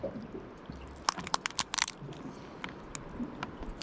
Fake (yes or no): no